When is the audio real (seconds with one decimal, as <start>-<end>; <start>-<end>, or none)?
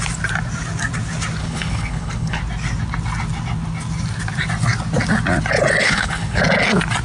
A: 0.0-1.4; 2.4-5.8; 6.4-7.0